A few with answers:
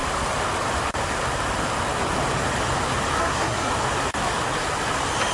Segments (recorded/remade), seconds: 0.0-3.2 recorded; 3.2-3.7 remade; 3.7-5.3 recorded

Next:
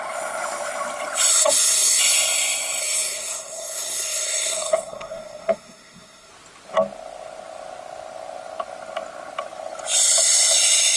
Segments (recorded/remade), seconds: 0.0-1.3 recorded; 1.3-2.0 remade; 2.0-2.8 recorded; 2.8-6.3 remade; 6.3-11.0 recorded

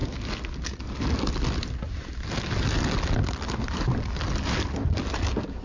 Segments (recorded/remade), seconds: 0.0-5.6 recorded

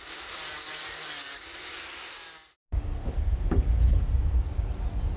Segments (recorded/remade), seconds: 0.0-5.2 recorded